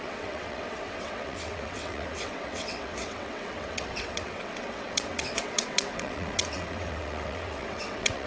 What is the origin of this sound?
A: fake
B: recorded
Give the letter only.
A